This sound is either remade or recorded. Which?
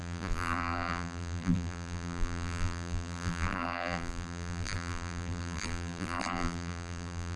remade